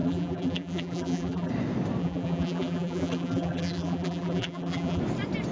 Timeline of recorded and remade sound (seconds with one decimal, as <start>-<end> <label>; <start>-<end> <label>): 0.0-1.5 remade; 1.5-2.0 recorded; 2.0-5.0 remade; 5.0-5.5 recorded